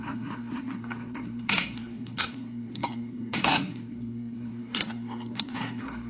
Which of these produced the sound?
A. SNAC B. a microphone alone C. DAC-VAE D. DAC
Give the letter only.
A